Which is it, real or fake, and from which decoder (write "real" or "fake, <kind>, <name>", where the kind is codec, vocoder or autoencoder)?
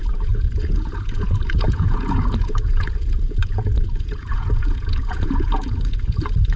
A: fake, vocoder, Vocos